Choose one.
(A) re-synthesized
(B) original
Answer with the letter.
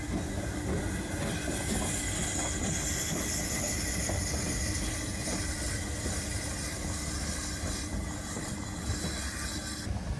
B